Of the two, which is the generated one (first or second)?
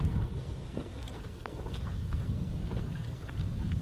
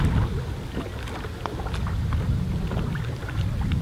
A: first